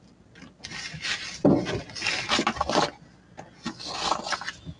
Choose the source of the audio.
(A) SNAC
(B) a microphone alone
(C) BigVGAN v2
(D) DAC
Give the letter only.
B